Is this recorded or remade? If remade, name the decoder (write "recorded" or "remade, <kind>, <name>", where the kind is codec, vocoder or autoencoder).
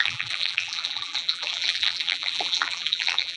remade, vocoder, BigVGAN v2